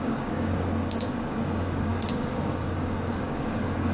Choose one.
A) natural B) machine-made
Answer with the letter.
B